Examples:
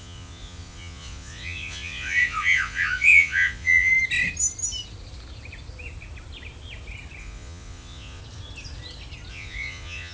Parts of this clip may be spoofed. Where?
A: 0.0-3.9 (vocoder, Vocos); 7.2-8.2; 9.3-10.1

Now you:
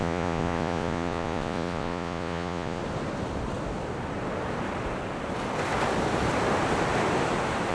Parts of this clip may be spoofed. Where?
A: 0.0-2.8 (vocoder, Vocos)

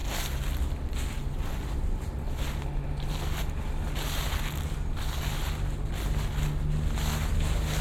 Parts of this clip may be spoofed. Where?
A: none

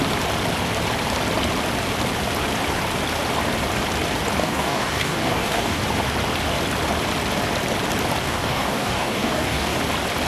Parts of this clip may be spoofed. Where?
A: 4.4-5.8 (codec, DAC); 8.2-9.8

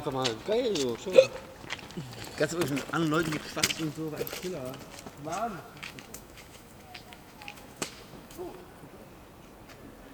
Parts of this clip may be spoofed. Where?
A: 5.3-8.6 (autoencoder, DAC-VAE)

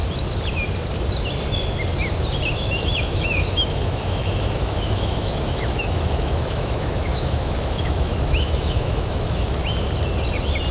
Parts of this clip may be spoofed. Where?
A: 2.5-9.6 (autoencoder, DAC-VAE)

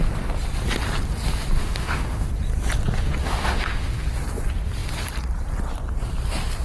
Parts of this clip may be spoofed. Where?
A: 1.6-2.3 (autoencoder, DAC-VAE); 3.2-4.0